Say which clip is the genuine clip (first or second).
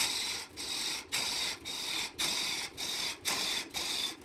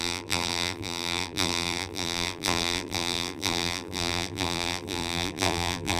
first